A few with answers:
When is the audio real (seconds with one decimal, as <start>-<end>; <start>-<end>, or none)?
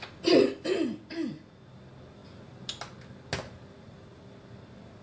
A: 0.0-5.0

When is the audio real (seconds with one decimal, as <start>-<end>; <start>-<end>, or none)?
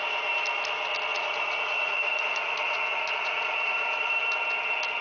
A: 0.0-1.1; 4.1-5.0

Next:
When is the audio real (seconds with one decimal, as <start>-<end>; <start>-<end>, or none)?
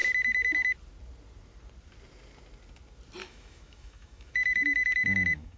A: 0.0-3.2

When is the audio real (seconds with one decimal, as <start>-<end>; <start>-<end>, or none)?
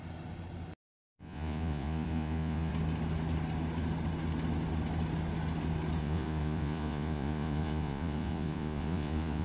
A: 0.0-0.8; 2.7-6.0